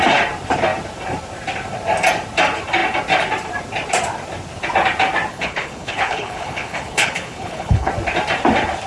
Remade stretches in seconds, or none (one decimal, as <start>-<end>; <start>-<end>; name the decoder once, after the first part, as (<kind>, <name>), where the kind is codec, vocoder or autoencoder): 5.3-7.9 (codec, HILCodec)